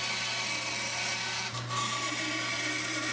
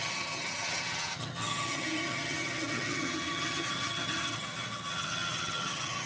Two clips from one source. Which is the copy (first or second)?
second